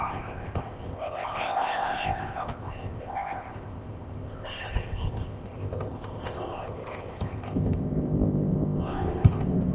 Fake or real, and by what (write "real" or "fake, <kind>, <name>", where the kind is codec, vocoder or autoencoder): fake, codec, ZipCodec